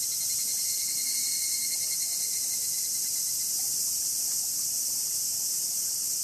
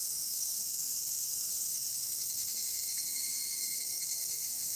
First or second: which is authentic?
first